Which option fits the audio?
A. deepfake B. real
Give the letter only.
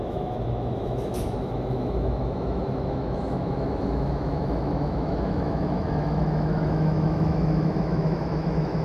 A